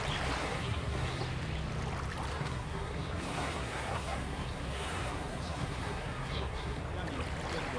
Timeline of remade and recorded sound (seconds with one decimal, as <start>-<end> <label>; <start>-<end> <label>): 0.0-0.4 recorded; 0.4-1.2 remade; 1.2-2.3 recorded; 2.3-6.8 remade; 6.8-7.8 recorded